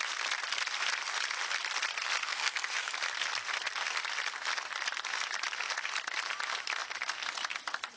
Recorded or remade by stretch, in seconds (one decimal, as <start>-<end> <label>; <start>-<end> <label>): 0.0-2.2 recorded; 2.2-2.9 remade; 2.9-8.0 recorded